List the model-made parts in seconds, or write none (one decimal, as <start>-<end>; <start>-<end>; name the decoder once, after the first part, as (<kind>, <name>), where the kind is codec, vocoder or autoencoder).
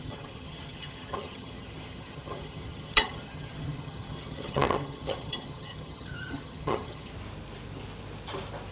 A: 0.0-7.1 (vocoder, HiFi-GAN)